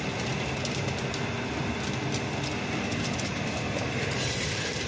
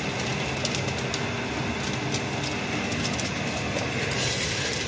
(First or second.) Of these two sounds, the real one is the second